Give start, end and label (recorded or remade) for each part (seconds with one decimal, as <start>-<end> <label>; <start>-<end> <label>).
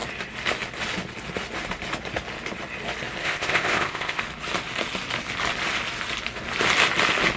0.0-3.2 recorded; 3.2-4.2 remade; 4.2-7.4 recorded